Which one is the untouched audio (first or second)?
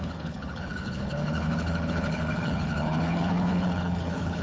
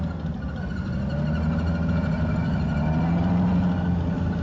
second